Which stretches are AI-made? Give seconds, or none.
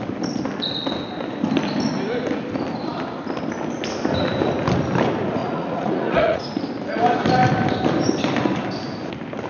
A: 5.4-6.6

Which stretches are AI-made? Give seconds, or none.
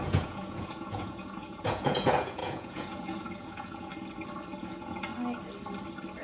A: 0.0-3.9; 4.6-5.1